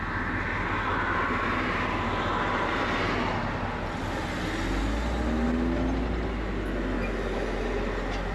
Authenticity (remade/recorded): recorded